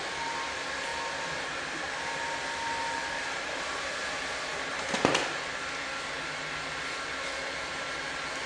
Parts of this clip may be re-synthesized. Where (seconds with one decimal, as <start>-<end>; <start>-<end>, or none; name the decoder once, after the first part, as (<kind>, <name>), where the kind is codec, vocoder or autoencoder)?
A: none